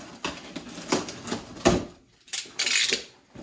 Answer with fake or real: real